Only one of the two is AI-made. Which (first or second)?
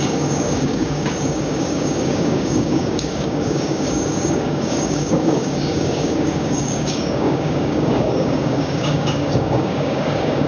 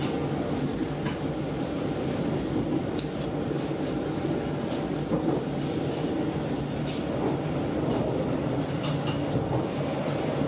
first